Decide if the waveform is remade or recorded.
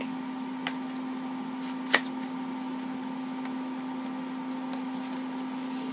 recorded